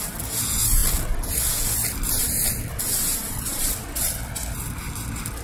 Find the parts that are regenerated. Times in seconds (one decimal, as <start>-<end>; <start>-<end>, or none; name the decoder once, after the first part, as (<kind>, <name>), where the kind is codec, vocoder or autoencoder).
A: 3.1-3.7 (vocoder, BigVGAN v2)